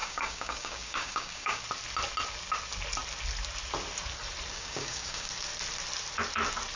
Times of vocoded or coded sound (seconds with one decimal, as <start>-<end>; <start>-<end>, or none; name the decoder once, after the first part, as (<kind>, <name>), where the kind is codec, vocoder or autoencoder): 0.0-1.6 (codec, DAC); 4.5-5.3

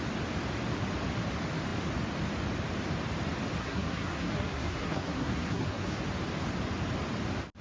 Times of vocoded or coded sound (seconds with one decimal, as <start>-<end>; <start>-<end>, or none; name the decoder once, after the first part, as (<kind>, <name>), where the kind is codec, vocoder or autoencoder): 3.6-6.0 (codec, SNAC)

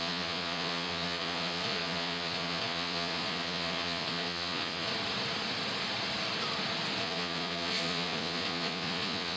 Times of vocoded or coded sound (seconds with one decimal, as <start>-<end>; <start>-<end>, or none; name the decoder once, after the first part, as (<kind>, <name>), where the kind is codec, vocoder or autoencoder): 0.0-4.9 (vocoder, Vocos); 7.0-9.4

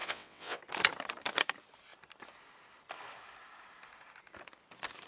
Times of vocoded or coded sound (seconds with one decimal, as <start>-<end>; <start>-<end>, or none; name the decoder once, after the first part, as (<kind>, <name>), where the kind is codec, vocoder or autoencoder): 0.0-0.6 (vocoder, WaveNeXt)

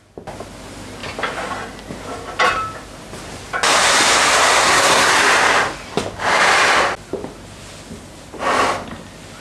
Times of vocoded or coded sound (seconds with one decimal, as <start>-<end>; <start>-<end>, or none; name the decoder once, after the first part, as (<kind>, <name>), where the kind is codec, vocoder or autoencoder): 4.6-5.1 (codec, SNAC)

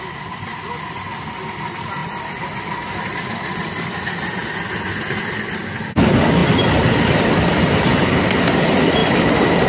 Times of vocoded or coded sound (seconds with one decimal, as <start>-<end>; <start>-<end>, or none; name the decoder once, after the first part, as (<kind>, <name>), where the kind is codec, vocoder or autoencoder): none

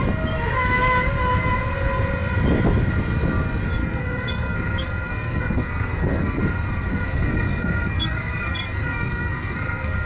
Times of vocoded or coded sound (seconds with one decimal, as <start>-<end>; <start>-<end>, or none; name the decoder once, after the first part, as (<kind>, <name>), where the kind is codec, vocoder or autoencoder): 3.8-6.4 (codec, SNAC); 6.9-10.1

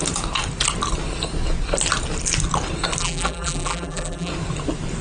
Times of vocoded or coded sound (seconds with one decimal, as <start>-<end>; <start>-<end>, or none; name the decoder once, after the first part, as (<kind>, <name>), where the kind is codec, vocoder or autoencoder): 3.0-4.3 (vocoder, BigVGAN v2)